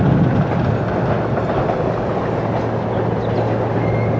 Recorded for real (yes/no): yes